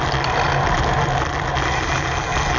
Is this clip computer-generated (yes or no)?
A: no